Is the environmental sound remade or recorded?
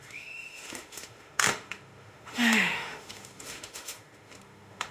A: remade